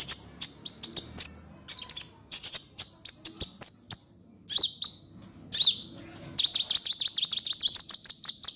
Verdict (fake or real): real